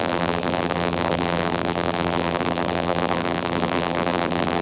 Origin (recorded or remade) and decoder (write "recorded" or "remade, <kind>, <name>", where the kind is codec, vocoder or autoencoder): remade, vocoder, BigVGAN v2